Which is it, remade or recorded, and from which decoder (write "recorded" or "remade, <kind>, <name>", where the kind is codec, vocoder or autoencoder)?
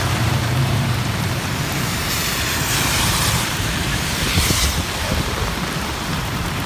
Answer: remade, vocoder, BigVGAN v2